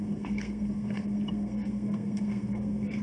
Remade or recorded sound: remade